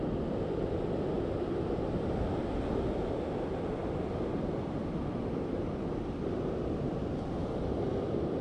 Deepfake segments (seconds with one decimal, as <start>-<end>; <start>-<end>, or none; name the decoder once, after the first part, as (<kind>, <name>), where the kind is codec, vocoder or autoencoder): none

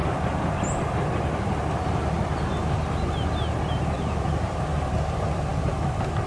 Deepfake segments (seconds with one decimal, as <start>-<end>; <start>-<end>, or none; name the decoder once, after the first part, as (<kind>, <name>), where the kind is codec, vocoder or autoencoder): 3.8-6.3 (vocoder, BigVGAN v2)

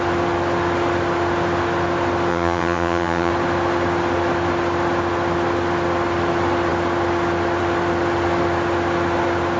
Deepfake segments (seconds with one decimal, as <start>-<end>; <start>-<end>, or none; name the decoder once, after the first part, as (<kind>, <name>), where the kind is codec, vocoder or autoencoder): 2.3-3.3 (vocoder, HiFi-GAN)

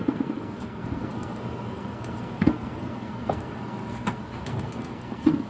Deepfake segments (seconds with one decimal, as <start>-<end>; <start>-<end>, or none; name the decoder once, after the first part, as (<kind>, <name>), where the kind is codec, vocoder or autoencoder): 0.0-5.5 (codec, SNAC)

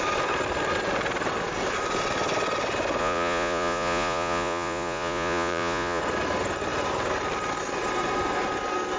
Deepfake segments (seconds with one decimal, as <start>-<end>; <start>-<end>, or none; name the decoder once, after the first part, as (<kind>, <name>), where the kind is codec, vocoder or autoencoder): 3.0-6.0 (vocoder, Vocos)